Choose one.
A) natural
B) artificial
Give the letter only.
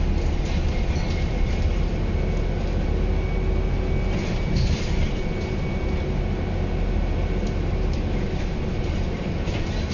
A